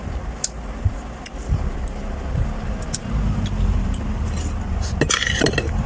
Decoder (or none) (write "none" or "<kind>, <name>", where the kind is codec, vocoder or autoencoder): none